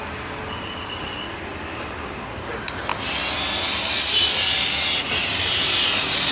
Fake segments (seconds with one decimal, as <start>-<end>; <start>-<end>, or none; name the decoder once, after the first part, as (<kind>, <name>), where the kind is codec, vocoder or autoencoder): none